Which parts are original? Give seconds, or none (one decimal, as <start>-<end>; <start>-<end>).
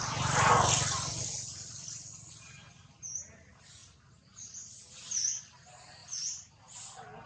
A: 0.0-7.3